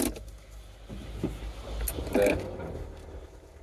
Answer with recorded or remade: recorded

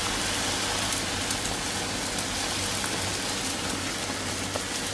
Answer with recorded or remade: recorded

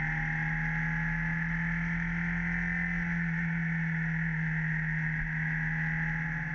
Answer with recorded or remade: recorded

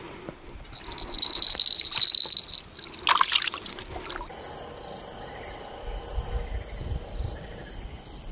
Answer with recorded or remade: recorded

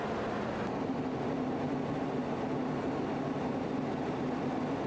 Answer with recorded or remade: recorded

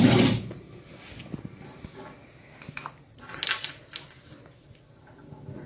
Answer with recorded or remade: recorded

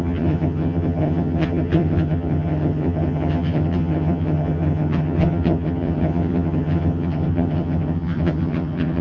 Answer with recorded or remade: remade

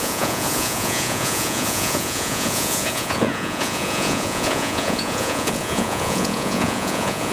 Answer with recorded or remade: remade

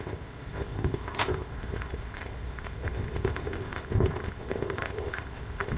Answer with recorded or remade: remade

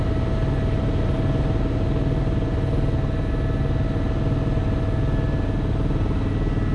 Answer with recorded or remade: recorded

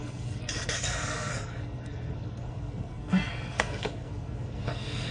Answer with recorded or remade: remade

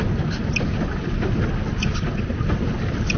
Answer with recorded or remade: recorded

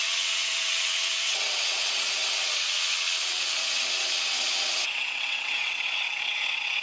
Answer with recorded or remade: remade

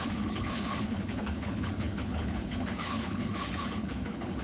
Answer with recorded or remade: remade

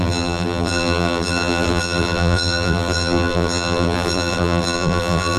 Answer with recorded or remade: remade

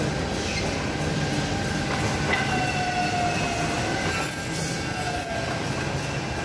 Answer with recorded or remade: recorded